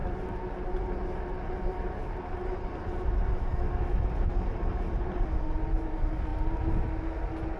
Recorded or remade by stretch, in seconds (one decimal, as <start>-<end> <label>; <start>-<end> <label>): 0.0-7.6 recorded